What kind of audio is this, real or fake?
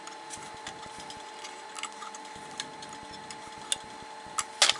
real